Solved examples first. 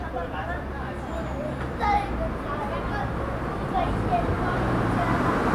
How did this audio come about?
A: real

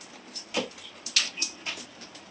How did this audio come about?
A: real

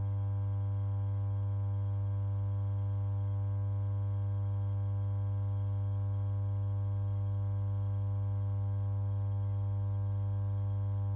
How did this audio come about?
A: real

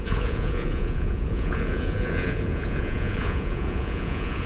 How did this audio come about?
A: fake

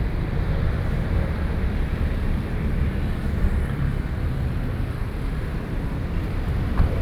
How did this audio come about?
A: fake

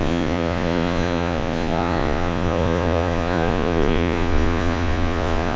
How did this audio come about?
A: fake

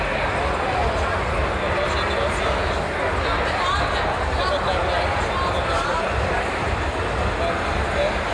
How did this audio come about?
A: real